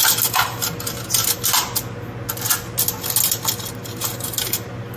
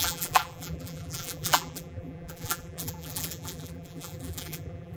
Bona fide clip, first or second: first